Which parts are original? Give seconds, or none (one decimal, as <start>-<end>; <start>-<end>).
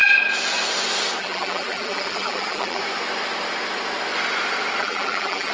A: 0.0-1.2; 2.8-4.8